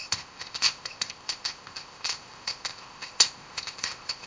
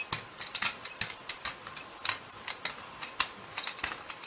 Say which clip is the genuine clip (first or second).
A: second